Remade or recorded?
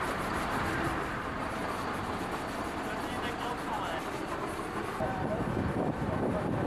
remade